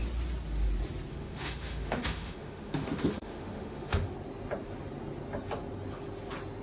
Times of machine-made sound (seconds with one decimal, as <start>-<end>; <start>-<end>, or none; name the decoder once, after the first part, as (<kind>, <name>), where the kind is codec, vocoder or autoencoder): 1.1-4.1 (autoencoder, DAC-VAE)